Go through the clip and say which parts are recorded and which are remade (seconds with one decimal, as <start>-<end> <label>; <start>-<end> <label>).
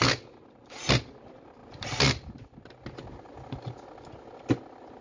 0.0-5.0 recorded